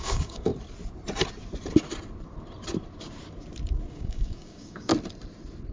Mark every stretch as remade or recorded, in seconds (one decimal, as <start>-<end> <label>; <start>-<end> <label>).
0.0-0.5 remade; 0.5-3.9 recorded; 3.9-4.9 remade; 4.9-5.7 recorded